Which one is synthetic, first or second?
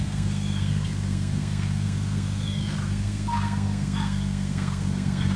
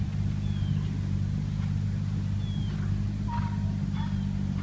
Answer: first